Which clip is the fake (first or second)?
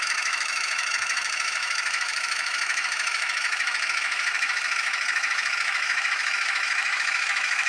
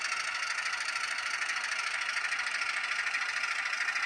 first